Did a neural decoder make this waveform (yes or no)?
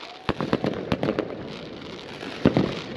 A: no